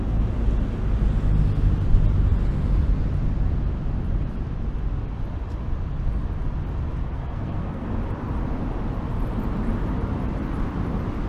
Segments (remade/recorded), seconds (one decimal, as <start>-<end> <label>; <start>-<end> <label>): 0.0-7.0 recorded; 7.0-7.9 remade; 7.9-11.3 recorded